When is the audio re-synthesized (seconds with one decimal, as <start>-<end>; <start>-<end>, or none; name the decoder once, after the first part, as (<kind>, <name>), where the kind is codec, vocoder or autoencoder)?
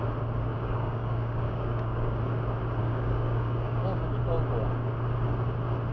0.5-2.2 (codec, DAC); 2.8-4.2